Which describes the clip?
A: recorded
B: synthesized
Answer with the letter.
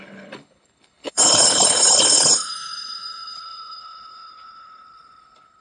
B